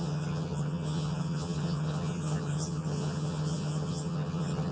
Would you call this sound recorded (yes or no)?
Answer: no